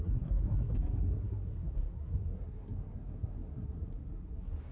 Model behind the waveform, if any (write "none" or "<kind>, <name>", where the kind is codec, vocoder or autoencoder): codec, SNAC